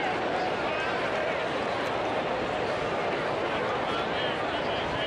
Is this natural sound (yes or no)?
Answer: yes